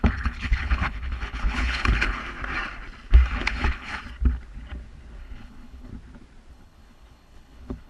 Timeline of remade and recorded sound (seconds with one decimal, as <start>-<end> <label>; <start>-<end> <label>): 0.0-2.2 remade; 2.2-3.4 recorded; 3.4-4.0 remade; 4.0-5.2 recorded; 5.2-5.9 remade; 5.9-6.5 recorded; 6.5-7.9 remade